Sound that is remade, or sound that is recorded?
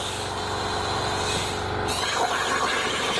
recorded